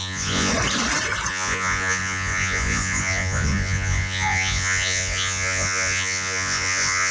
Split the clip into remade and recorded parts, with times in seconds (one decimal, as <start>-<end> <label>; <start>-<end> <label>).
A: 0.0-0.5 remade; 0.5-1.3 recorded; 1.3-7.1 remade